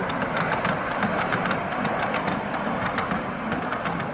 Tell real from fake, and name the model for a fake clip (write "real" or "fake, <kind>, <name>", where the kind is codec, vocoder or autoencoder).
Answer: real